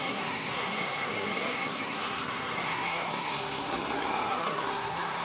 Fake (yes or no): yes